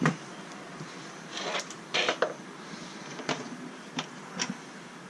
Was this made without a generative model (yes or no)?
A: no